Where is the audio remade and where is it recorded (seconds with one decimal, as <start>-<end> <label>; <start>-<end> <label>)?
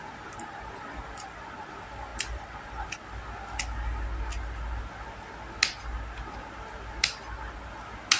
0.0-8.2 recorded